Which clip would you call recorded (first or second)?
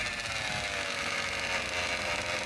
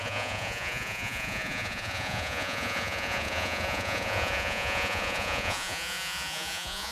first